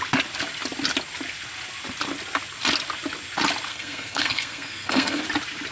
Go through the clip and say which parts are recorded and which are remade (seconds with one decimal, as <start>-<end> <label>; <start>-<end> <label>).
0.0-3.7 recorded; 3.7-5.2 remade; 5.2-5.7 recorded